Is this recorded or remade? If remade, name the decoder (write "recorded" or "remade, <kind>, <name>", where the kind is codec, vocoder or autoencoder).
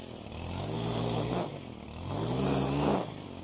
recorded